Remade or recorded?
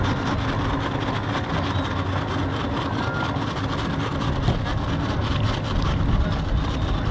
recorded